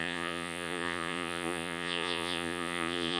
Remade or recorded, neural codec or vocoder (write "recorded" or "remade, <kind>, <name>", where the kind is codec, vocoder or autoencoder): remade, vocoder, Vocos